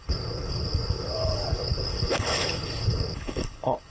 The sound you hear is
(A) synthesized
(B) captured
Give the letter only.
A